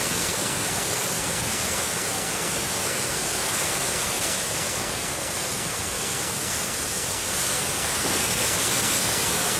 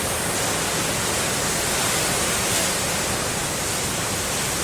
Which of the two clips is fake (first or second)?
first